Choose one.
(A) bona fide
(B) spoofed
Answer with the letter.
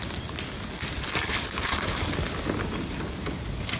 A